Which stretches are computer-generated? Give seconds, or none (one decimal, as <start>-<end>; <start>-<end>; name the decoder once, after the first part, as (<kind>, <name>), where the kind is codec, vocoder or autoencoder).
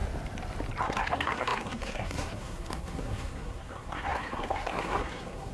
0.8-5.5 (codec, SNAC)